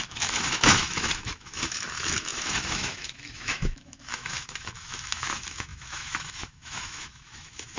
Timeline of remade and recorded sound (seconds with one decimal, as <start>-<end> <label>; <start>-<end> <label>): 0.0-7.8 remade